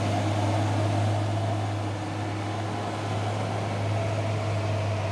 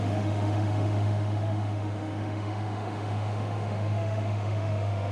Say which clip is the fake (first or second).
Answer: second